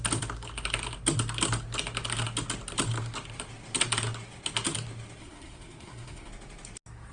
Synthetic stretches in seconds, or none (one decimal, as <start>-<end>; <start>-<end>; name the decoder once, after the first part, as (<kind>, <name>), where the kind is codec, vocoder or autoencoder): 5.2-6.3 (codec, SNAC)